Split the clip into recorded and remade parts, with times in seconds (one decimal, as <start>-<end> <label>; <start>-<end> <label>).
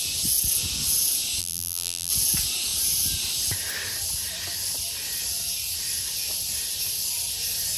0.0-1.4 recorded; 1.4-2.1 remade; 2.1-7.8 recorded